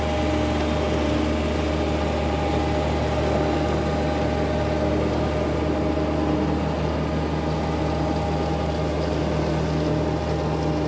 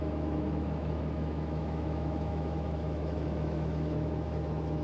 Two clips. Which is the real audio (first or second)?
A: first